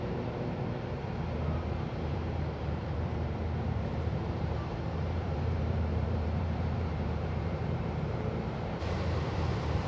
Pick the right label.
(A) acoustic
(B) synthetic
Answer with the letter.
B